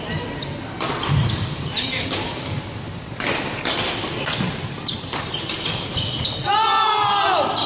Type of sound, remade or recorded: recorded